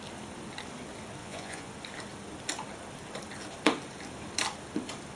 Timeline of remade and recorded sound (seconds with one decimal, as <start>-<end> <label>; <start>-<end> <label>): 0.0-1.2 recorded; 1.2-1.7 remade; 1.7-5.2 recorded